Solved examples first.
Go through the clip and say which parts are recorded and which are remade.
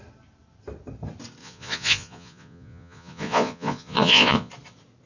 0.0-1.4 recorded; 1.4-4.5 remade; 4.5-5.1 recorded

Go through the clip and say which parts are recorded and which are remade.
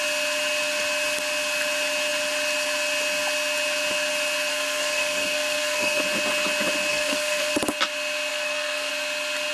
0.0-4.5 recorded; 4.5-6.0 remade; 6.0-6.9 recorded; 6.9-7.5 remade; 7.5-8.3 recorded; 8.3-8.9 remade; 8.9-9.5 recorded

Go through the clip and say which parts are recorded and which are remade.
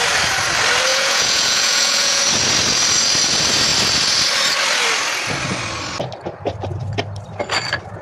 0.0-0.9 recorded; 0.9-2.2 remade; 2.2-8.0 recorded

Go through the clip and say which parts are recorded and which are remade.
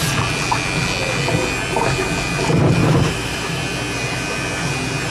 0.0-2.8 recorded; 2.8-3.6 remade; 3.6-5.1 recorded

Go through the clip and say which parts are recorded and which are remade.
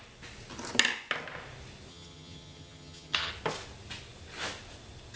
0.0-1.9 recorded; 1.9-3.3 remade; 3.3-5.2 recorded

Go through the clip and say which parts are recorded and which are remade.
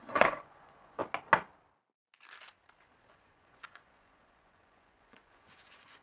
0.0-1.0 remade; 1.0-3.1 recorded; 3.1-6.0 remade